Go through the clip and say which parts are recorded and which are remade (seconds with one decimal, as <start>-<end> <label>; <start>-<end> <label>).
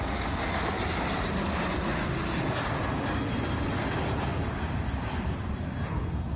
0.0-6.4 recorded